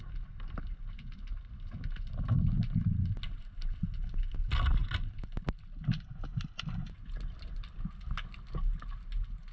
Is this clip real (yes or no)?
yes